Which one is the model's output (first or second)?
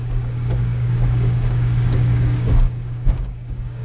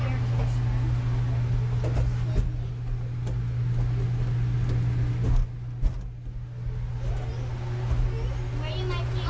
first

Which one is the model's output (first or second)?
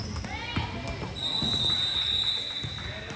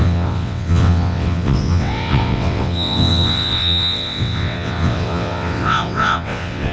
second